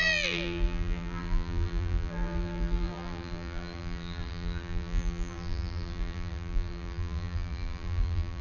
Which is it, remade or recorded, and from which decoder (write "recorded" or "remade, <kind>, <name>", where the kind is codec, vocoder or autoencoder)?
remade, vocoder, BigVGAN v2